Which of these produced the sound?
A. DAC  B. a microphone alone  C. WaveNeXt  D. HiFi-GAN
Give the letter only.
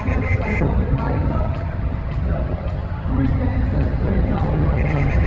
D